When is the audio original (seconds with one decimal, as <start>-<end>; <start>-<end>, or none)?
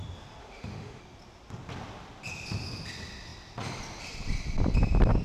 0.0-0.4; 1.0-5.2